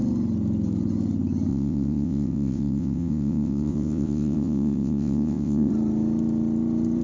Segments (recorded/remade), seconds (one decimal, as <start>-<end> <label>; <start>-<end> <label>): 0.0-1.5 recorded; 1.5-5.7 remade; 5.7-7.0 recorded